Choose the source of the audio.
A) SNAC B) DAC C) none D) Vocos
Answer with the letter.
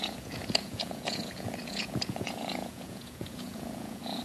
D